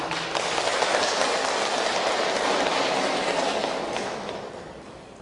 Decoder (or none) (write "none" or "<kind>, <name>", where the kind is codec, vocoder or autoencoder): none